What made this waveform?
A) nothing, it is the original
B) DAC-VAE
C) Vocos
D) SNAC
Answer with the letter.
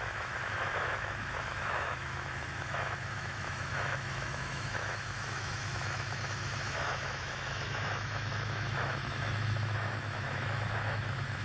B